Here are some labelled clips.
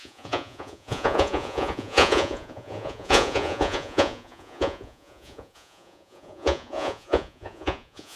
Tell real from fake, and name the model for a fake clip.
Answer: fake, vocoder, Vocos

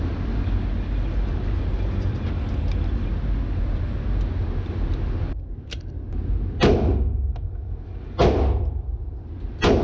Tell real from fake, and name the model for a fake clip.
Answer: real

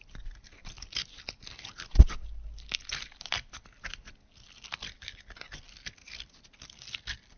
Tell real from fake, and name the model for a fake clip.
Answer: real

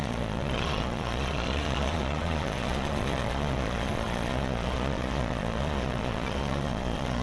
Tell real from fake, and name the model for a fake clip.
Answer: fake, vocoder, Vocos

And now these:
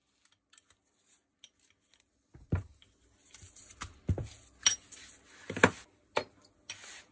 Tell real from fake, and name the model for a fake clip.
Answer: real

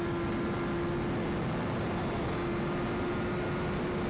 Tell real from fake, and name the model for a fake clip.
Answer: real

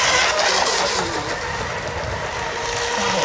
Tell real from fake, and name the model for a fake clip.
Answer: real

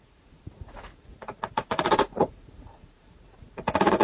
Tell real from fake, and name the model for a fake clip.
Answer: fake, vocoder, Vocos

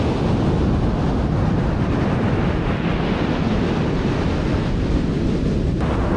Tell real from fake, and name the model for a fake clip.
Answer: real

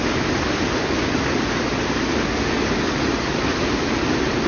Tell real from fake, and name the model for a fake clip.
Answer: real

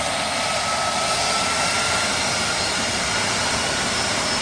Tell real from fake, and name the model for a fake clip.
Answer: real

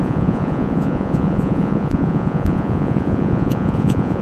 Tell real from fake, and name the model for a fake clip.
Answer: fake, vocoder, Vocos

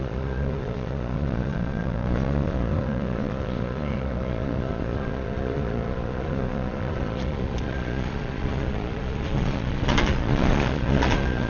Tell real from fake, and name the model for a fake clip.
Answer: fake, vocoder, Vocos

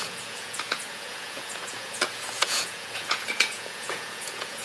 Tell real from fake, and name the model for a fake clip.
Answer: fake, vocoder, Vocos